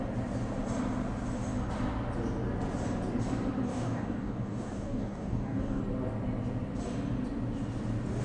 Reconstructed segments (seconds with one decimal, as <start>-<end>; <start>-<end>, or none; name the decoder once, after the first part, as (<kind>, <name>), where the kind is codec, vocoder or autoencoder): 3.7-5.8 (codec, DAC)

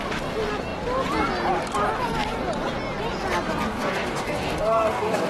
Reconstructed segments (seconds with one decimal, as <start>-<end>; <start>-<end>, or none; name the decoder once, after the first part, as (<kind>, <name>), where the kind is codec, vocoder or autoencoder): 3.7-5.3 (codec, DAC)

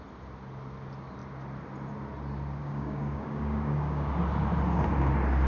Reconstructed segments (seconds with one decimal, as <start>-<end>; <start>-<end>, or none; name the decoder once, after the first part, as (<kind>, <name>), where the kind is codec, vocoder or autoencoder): 2.6-4.1 (codec, DAC)

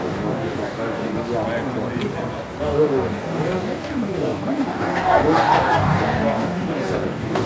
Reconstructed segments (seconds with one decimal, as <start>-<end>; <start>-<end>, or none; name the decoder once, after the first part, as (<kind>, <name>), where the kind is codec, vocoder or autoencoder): 0.0-1.1 (codec, DAC); 2.6-7.5

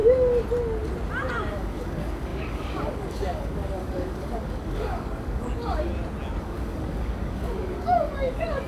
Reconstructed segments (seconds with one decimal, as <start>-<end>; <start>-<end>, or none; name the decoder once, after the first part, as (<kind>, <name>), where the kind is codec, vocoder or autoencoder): 1.5-5.9 (codec, DAC); 6.4-8.7

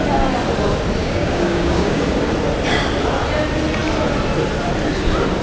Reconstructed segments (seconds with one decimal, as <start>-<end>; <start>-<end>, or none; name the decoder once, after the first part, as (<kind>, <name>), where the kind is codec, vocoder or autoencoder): 1.0-2.0 (codec, DAC)